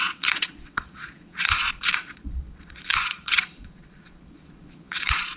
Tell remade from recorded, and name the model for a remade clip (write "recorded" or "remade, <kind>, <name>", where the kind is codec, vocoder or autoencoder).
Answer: remade, vocoder, Vocos